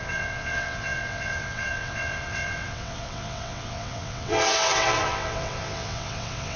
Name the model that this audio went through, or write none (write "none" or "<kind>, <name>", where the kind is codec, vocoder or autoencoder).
vocoder, WaveNeXt